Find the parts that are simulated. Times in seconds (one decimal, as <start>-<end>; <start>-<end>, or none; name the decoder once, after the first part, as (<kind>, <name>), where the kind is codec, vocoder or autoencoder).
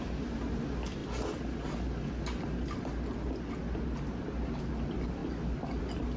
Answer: none